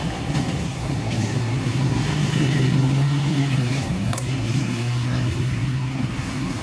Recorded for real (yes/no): no